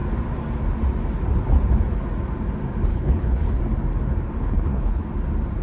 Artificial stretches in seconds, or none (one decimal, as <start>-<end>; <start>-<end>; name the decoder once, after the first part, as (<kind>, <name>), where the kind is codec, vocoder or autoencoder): 2.9-3.6 (codec, HILCodec); 4.4-5.0

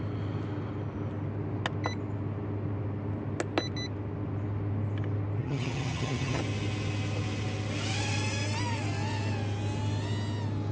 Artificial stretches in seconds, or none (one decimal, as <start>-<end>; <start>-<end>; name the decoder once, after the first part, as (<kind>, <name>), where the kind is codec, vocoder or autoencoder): 5.4-6.4 (vocoder, HiFi-GAN)

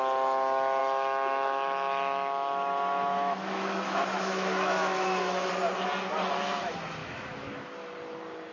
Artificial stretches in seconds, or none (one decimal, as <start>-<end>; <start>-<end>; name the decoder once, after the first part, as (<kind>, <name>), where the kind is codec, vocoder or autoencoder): 0.8-5.5 (autoencoder, DAC-VAE); 7.0-7.7

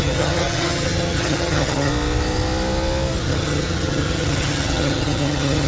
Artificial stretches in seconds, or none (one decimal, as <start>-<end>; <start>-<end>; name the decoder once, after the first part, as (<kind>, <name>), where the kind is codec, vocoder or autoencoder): 0.0-1.9 (vocoder, HiFi-GAN); 3.2-5.7

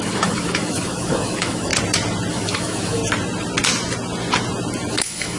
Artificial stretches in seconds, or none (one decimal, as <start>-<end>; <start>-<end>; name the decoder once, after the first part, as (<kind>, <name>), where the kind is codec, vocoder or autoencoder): 0.0-1.7 (autoencoder, DAC-VAE); 2.3-3.0; 4.9-5.4

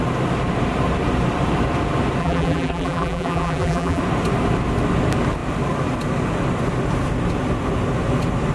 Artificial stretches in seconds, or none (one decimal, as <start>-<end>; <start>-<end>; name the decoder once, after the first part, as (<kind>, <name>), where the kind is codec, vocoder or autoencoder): 2.2-4.0 (vocoder, BigVGAN v2)

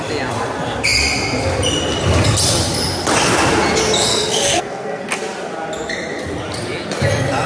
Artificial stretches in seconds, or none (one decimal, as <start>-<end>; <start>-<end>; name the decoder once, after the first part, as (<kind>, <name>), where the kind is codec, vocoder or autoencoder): 4.1-5.0 (codec, SNAC)